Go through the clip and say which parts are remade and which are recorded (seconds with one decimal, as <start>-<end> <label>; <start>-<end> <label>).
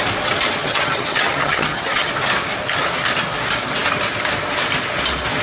0.0-0.6 recorded; 0.6-2.1 remade; 2.1-5.4 recorded